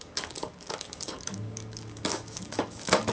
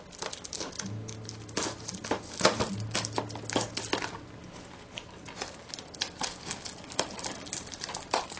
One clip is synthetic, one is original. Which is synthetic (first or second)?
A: first